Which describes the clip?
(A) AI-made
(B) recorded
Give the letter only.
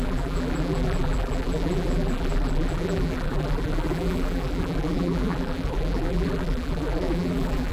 A